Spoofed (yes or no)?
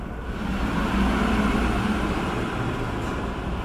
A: no